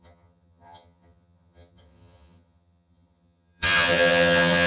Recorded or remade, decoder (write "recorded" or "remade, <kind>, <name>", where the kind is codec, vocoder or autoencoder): remade, vocoder, HiFi-GAN